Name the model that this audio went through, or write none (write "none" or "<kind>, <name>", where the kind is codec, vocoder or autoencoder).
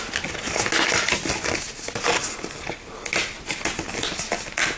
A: none